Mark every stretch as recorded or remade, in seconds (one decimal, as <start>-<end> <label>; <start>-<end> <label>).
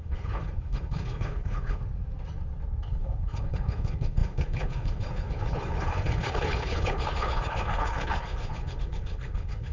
0.0-1.8 remade; 1.8-2.8 recorded; 2.8-9.7 remade